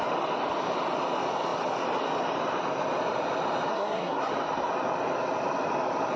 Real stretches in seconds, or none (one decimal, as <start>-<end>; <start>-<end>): 0.0-3.7; 4.3-6.2